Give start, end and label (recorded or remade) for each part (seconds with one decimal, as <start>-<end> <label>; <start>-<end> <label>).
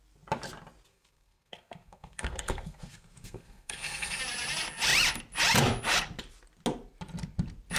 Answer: 0.0-0.9 recorded; 0.9-4.2 remade; 4.2-7.8 recorded